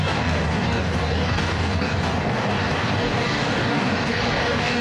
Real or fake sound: fake